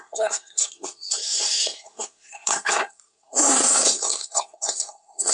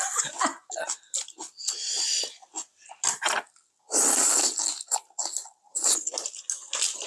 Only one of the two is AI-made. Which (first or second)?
first